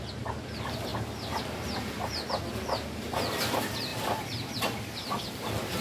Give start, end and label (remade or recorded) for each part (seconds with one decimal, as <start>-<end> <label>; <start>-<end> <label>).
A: 0.0-3.9 recorded; 3.9-5.2 remade; 5.2-5.8 recorded